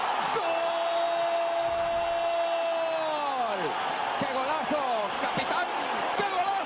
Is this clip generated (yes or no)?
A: no